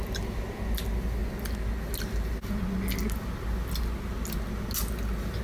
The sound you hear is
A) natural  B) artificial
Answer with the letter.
A